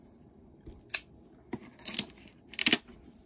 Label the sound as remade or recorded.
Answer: recorded